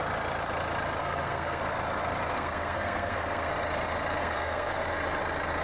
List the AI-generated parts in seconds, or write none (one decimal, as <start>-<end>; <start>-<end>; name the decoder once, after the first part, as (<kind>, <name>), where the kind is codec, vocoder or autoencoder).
1.0-1.6 (codec, SNAC); 2.3-3.5; 4.2-4.9